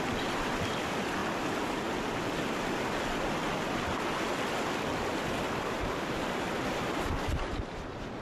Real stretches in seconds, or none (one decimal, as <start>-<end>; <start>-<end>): 0.0-8.2